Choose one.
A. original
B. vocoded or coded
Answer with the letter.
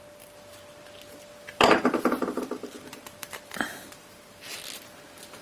B